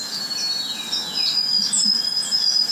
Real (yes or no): yes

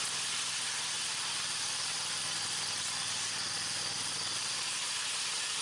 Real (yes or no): yes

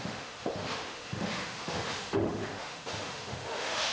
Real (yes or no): no